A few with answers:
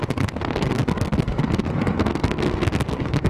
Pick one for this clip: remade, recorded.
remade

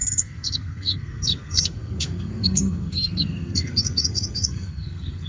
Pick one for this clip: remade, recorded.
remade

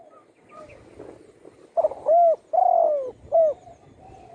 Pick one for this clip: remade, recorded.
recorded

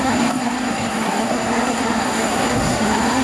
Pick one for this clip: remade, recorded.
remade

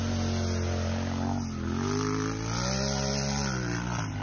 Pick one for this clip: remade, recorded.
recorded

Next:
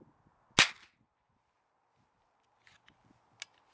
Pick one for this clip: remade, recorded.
recorded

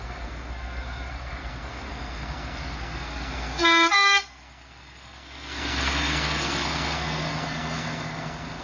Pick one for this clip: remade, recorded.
remade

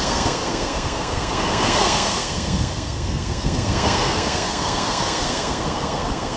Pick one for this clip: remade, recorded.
remade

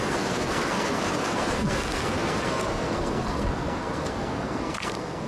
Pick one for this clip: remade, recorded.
remade